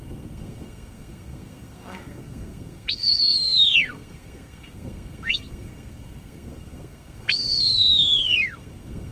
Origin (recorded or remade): remade